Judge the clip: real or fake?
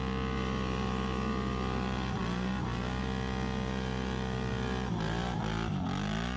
real